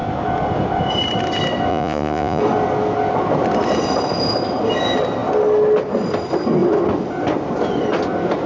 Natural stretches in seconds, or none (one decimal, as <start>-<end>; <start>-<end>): 0.0-1.7; 2.4-8.5